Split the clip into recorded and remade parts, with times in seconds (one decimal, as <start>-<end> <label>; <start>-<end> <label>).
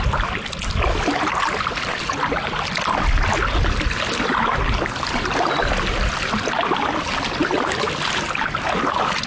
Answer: 0.0-9.3 recorded